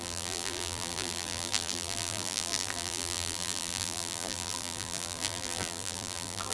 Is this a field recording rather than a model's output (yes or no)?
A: no